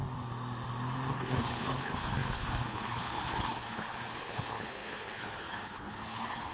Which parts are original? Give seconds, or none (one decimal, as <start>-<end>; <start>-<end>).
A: 0.0-1.1